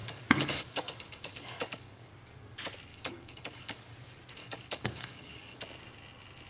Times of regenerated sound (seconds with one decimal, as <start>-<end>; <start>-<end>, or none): 0.0-2.1; 2.9-3.9; 4.4-5.6